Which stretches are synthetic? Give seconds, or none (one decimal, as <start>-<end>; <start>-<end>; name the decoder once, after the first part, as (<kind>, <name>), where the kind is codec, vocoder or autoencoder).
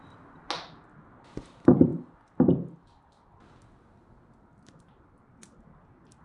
none